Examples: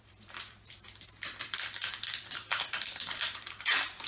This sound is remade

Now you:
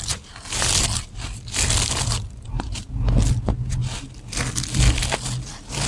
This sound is recorded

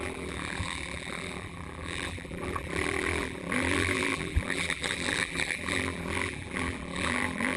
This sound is remade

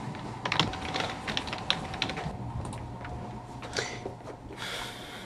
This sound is recorded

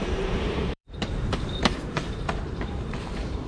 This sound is remade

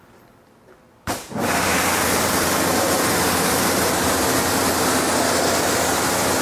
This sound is recorded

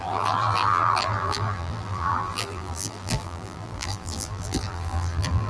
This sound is remade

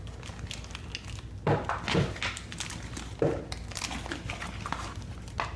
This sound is recorded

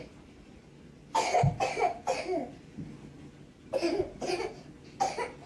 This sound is recorded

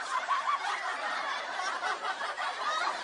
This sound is remade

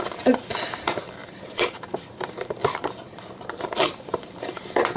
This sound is remade